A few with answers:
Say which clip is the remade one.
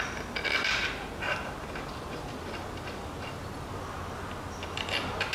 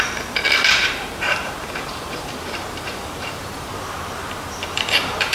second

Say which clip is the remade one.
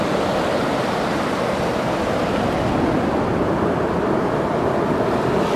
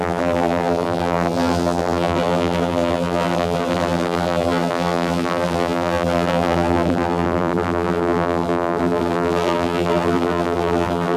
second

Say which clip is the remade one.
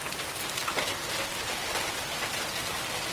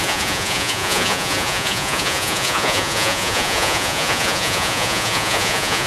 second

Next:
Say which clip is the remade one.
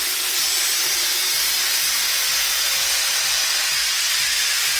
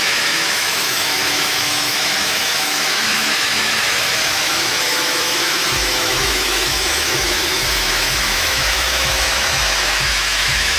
second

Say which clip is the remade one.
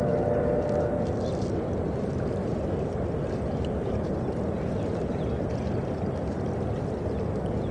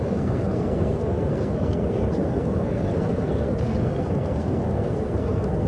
second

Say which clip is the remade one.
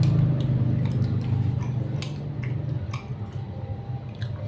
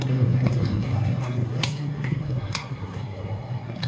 second